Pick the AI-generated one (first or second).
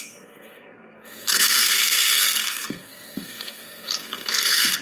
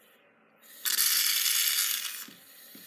first